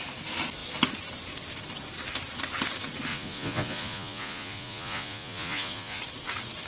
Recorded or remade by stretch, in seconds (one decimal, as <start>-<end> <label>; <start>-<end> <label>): 0.0-3.1 recorded; 3.1-6.0 remade; 6.0-6.7 recorded